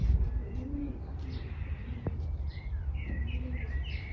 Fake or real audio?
real